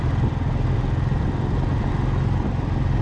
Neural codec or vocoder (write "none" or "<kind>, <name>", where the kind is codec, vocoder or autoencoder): none